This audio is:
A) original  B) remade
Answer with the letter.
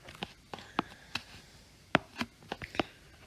A